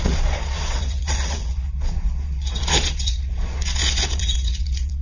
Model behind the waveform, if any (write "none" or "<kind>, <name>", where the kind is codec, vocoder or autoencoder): vocoder, Vocos